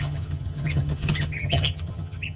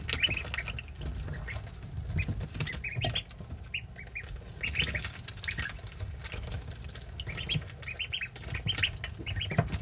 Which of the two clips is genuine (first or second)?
second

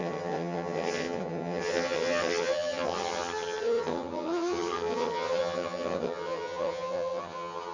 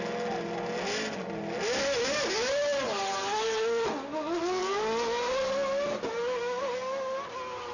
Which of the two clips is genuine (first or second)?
second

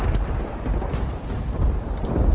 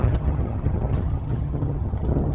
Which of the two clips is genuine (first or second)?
first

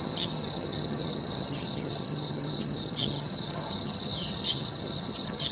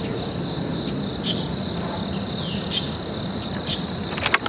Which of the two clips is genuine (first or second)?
second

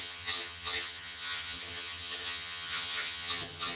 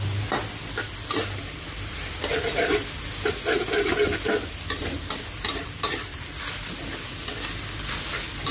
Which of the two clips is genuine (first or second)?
second